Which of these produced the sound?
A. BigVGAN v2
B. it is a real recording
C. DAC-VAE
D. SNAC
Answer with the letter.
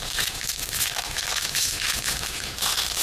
C